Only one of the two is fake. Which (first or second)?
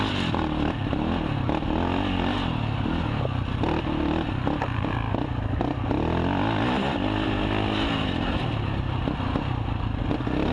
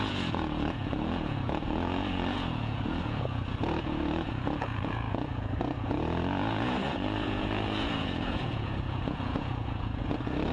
second